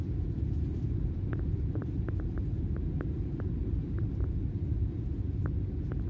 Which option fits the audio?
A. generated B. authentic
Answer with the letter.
A